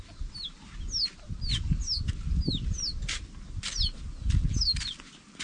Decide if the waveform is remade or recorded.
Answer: recorded